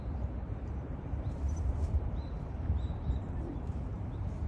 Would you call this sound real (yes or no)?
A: no